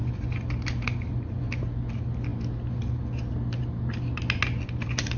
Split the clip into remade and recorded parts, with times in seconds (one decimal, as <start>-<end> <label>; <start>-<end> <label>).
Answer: 0.0-5.2 recorded